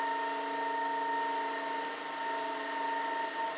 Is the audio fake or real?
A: real